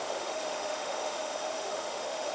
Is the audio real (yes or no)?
no